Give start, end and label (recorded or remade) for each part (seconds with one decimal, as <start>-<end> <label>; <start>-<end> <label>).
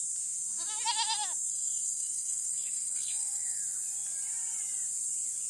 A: 0.0-1.5 recorded; 1.5-3.6 remade; 3.6-5.5 recorded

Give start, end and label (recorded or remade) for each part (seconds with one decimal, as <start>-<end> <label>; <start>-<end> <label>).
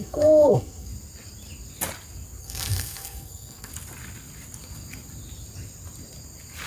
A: 0.0-0.9 remade; 0.9-2.4 recorded; 2.4-3.7 remade; 3.7-6.7 recorded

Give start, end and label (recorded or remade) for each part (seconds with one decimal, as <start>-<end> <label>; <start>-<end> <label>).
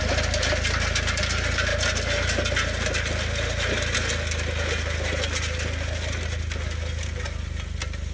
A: 0.0-8.1 recorded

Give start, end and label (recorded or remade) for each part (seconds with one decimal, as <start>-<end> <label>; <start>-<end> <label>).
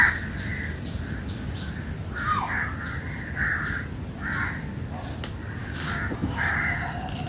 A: 0.0-5.6 recorded; 5.6-6.5 remade; 6.5-7.3 recorded